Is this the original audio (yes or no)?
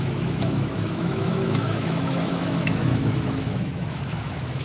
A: no